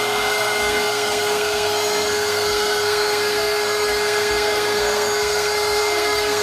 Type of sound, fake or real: fake